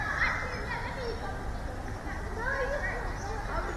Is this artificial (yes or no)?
no